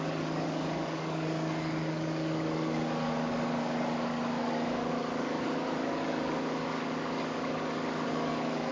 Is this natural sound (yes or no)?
no